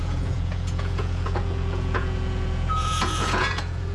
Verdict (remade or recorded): remade